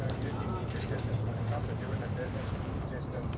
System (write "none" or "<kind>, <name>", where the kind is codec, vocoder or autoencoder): vocoder, BigVGAN v2